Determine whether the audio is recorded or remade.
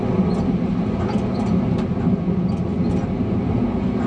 recorded